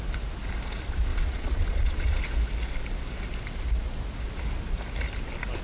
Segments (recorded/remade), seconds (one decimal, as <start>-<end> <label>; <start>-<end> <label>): 0.0-1.1 recorded; 1.1-2.2 remade; 2.2-5.6 recorded